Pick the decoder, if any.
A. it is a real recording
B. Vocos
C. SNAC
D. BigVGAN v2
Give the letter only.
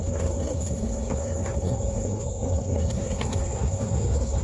C